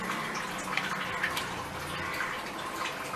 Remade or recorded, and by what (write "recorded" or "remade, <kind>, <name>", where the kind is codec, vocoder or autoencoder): recorded